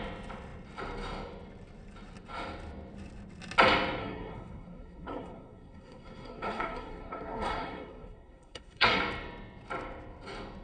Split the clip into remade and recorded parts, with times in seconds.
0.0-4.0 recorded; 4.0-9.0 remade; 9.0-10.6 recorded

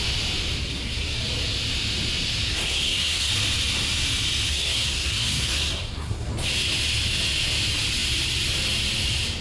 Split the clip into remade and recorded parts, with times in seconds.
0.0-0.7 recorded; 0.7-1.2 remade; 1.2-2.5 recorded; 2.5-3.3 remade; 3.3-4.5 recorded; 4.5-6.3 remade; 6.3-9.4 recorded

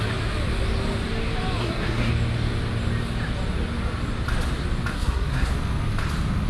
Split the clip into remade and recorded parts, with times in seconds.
0.0-1.6 recorded; 1.6-2.1 remade; 2.1-4.9 recorded; 4.9-5.5 remade; 5.5-6.5 recorded